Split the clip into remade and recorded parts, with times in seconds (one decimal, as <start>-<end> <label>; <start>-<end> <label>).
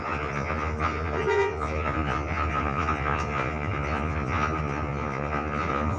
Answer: 0.0-6.0 remade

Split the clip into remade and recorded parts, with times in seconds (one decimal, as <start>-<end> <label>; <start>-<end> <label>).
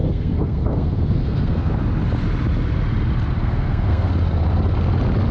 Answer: 0.0-1.7 remade; 1.7-3.4 recorded; 3.4-4.1 remade; 4.1-5.3 recorded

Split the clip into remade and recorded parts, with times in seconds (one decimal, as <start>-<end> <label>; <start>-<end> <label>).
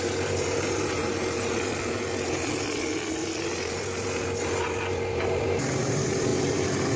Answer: 0.0-1.0 remade; 1.0-5.1 recorded; 5.1-7.0 remade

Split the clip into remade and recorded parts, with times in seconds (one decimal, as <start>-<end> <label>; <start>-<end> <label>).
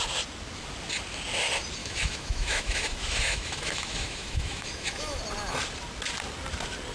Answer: 0.0-1.8 recorded; 1.8-5.2 remade; 5.2-6.9 recorded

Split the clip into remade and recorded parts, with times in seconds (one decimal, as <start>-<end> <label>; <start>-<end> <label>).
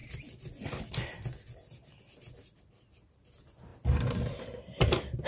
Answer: 0.0-5.3 recorded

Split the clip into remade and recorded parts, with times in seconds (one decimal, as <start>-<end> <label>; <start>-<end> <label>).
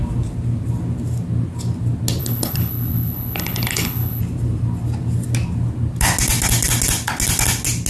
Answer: 0.0-2.2 recorded; 2.2-4.2 remade; 4.2-7.9 recorded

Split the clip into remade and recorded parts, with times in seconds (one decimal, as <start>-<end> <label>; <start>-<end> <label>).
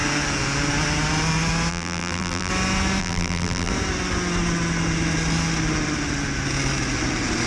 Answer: 0.0-1.7 recorded; 1.7-2.5 remade; 2.5-3.0 recorded; 3.0-3.7 remade; 3.7-7.5 recorded